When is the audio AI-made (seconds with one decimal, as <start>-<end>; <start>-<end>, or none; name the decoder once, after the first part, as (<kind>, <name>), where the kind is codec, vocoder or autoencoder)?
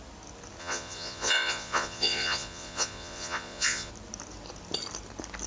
0.6-3.9 (vocoder, Vocos)